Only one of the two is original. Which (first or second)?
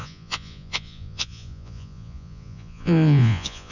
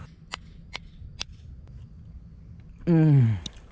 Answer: second